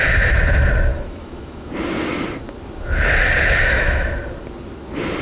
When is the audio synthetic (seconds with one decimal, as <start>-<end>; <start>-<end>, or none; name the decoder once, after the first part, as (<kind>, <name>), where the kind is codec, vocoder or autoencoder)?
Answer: 0.9-1.7 (autoencoder, DAC-VAE); 3.6-4.2